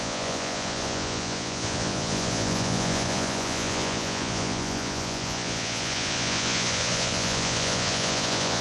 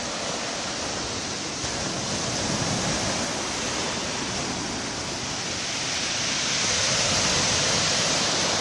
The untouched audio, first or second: second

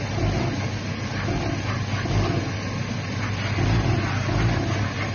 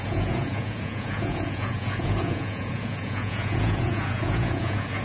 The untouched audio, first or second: first